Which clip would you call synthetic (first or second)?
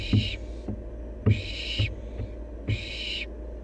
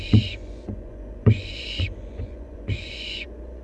second